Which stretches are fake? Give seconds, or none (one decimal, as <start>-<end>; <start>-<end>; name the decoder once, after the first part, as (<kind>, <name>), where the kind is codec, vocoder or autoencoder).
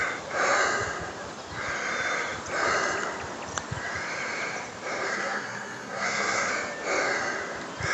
5.1-6.5 (codec, SNAC)